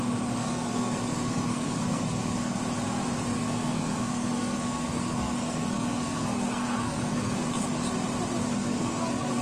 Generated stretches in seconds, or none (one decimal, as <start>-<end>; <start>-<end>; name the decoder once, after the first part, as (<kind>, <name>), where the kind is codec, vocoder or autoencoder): 0.4-2.6 (codec, SNAC); 3.3-7.5; 8.4-9.4